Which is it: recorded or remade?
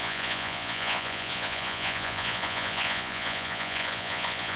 remade